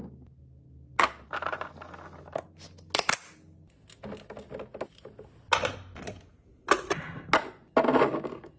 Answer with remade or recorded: recorded